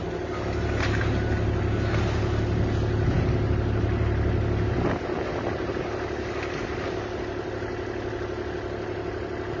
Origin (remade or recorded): recorded